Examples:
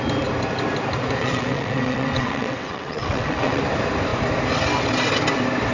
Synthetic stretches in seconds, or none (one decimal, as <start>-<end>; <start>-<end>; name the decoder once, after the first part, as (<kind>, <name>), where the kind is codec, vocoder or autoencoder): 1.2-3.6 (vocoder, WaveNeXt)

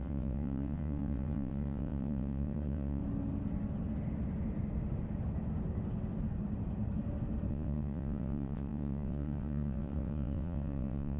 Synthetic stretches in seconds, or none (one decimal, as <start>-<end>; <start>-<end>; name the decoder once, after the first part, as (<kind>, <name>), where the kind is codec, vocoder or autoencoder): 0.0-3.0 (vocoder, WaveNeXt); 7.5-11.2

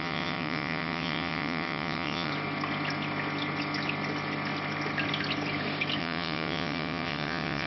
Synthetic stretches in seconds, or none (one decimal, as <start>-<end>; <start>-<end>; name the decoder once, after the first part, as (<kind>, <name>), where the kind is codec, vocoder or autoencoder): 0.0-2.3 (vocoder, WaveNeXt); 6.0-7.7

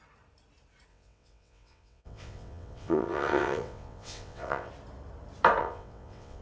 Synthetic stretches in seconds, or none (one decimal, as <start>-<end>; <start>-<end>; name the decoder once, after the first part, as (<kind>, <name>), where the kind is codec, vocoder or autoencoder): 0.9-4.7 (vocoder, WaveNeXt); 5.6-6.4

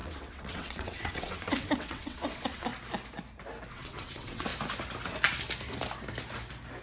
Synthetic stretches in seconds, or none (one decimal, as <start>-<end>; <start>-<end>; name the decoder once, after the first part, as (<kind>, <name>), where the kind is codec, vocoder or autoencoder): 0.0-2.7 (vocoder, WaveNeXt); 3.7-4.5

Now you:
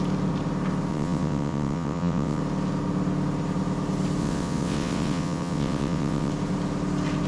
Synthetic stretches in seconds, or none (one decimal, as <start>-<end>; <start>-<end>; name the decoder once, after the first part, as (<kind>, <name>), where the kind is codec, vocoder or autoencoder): 0.9-2.4 (vocoder, WaveNeXt); 4.2-6.3